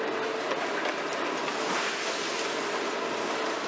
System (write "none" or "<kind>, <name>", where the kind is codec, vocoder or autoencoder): none